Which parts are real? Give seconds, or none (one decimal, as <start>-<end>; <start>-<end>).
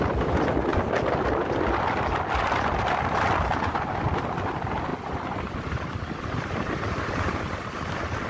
0.0-8.3